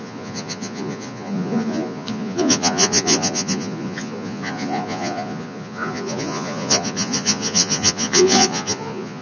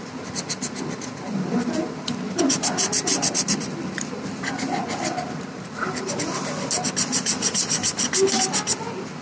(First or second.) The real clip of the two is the second